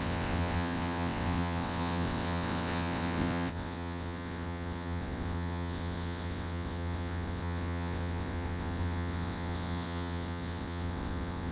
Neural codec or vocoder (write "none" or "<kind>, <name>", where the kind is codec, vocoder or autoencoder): vocoder, WaveNeXt